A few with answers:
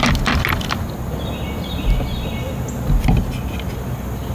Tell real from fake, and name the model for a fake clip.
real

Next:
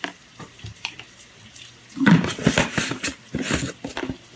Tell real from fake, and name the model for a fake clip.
real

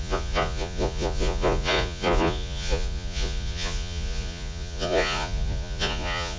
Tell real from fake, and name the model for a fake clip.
fake, vocoder, Vocos